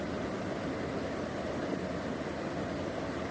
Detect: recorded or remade recorded